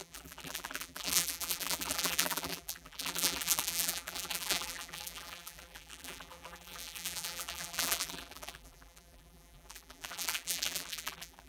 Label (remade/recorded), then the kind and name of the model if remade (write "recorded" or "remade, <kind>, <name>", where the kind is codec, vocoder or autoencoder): remade, vocoder, BigVGAN v2